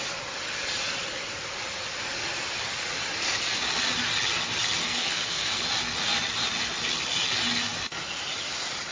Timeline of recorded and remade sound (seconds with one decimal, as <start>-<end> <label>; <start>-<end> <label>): 0.0-4.8 recorded; 4.8-5.6 remade; 5.6-8.9 recorded